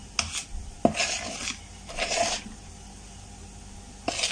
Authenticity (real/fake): real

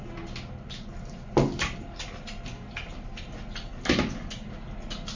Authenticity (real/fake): real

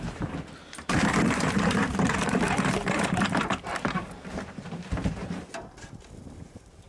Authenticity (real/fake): fake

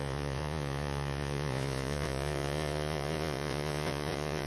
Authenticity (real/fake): fake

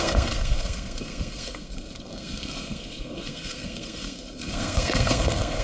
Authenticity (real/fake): fake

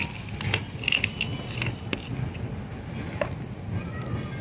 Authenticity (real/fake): real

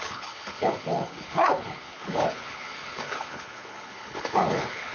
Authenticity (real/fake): fake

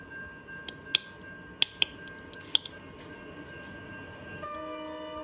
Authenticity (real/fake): real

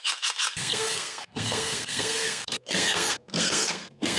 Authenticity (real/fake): fake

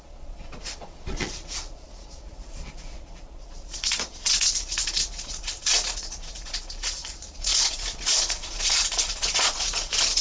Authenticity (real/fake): fake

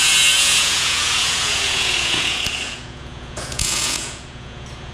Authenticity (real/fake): fake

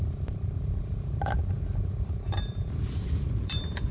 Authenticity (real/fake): fake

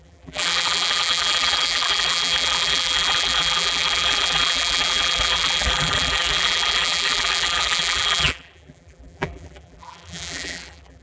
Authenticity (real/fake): fake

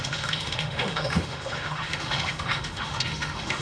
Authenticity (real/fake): fake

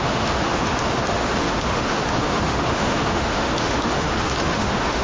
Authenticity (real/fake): fake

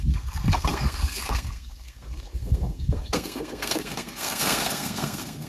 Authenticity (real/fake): fake